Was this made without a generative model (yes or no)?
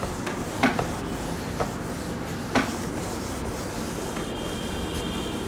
yes